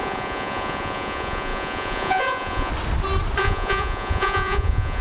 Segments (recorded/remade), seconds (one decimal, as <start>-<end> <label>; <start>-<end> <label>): 0.0-2.7 remade; 2.7-3.4 recorded; 3.4-5.0 remade